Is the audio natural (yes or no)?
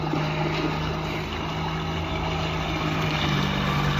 yes